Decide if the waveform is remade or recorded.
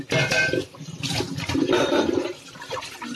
recorded